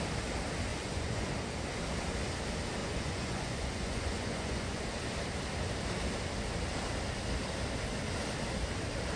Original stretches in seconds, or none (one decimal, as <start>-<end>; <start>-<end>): 0.0-0.7; 1.3-2.8; 4.8-9.2